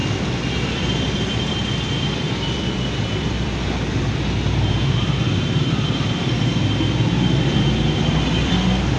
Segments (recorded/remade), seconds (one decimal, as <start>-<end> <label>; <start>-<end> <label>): 0.0-0.6 recorded; 0.6-9.0 remade